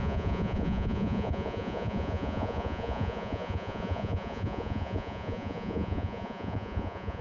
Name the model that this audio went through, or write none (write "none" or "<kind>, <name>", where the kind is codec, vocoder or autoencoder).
vocoder, Vocos